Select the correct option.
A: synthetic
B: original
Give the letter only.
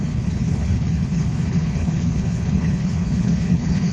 A